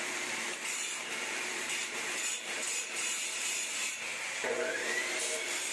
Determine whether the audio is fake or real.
fake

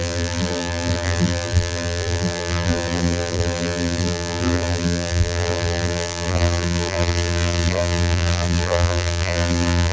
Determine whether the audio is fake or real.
fake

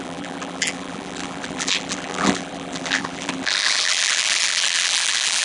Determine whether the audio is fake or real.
fake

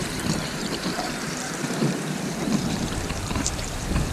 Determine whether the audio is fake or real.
fake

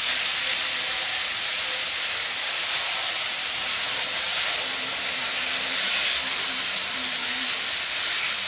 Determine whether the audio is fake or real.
fake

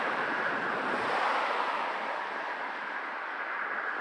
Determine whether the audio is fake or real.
real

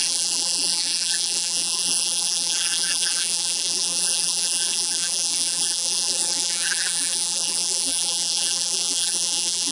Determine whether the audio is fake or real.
fake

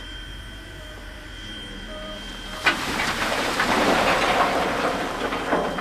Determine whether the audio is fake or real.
fake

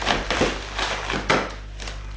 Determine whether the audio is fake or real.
real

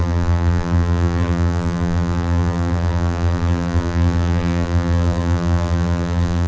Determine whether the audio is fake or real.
fake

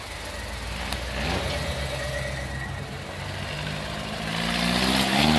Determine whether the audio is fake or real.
real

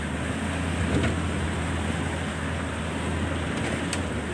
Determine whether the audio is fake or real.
real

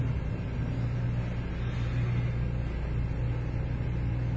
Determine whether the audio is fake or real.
real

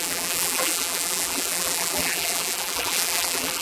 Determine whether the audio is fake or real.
fake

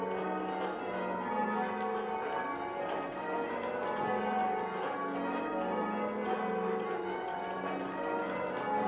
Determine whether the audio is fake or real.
real